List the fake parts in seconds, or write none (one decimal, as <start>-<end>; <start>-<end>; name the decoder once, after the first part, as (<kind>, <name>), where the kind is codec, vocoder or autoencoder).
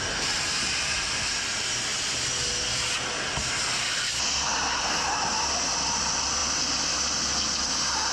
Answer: none